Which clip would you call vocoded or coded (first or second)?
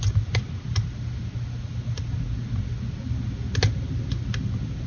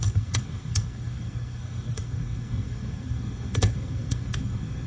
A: second